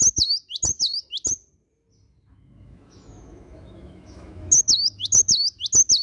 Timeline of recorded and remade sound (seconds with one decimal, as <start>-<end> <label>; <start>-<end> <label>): 0.0-2.3 recorded; 2.3-5.4 remade; 5.4-6.0 recorded